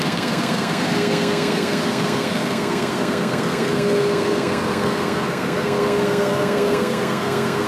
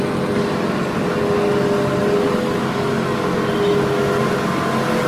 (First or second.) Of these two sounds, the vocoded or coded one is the first